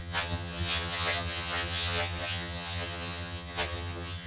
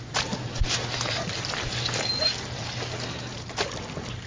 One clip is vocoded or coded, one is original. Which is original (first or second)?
second